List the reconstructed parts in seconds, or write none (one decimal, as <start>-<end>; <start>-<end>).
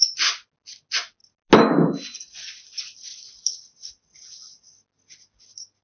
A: none